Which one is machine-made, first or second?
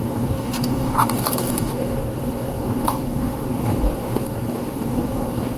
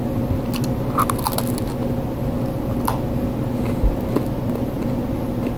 first